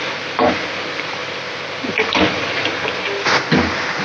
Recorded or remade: remade